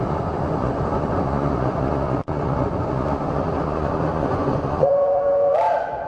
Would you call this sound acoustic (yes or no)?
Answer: no